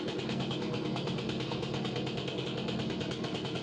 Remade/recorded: remade